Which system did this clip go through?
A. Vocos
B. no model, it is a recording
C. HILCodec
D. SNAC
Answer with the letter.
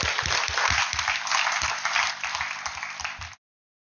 B